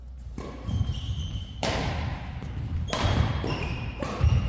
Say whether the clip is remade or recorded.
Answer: remade